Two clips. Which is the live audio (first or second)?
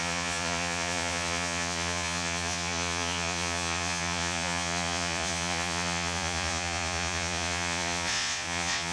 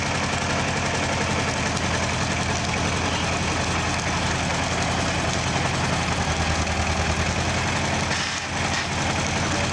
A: second